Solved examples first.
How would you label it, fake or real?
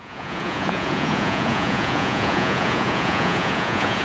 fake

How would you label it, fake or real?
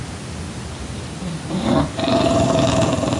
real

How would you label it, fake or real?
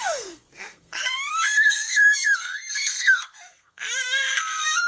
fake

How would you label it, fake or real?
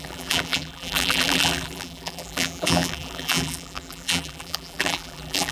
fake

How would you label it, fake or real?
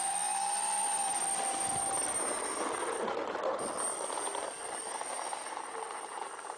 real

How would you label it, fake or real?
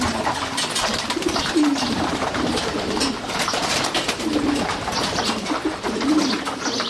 fake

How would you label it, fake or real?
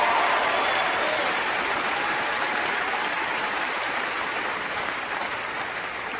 fake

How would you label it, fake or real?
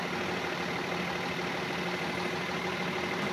real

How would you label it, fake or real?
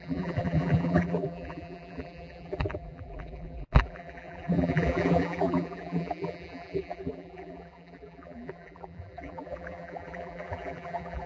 fake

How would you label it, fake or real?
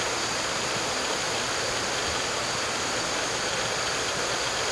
real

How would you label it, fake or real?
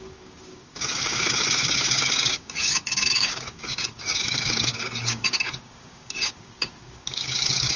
fake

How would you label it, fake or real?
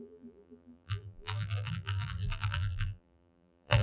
fake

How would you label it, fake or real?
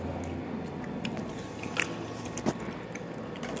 real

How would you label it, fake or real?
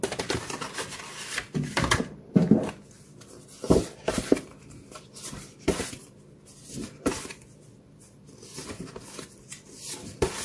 real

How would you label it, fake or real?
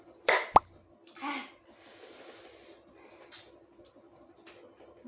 real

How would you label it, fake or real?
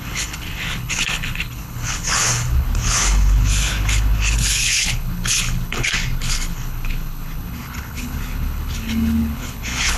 fake